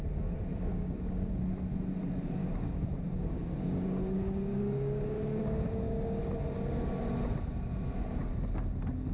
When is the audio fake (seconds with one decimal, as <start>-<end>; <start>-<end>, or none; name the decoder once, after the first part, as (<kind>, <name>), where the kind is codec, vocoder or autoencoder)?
0.7-1.4 (codec, DAC); 2.4-6.2